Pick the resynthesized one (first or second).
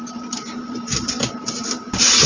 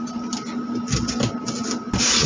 first